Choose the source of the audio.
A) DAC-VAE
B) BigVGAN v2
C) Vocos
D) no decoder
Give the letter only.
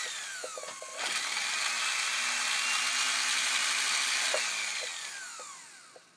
D